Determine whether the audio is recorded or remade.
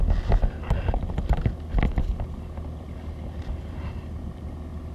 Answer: recorded